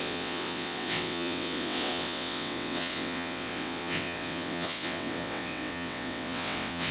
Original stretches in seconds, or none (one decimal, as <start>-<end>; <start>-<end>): none